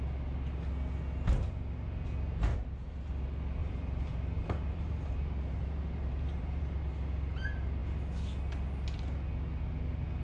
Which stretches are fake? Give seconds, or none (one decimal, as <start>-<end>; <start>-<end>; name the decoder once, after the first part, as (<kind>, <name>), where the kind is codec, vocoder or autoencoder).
2.5-3.1 (vocoder, BigVGAN v2); 3.6-6.8